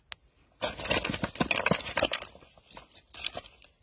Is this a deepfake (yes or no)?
no